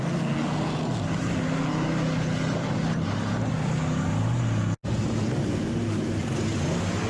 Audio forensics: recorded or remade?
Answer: recorded